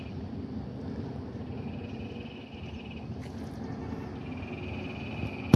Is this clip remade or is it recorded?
recorded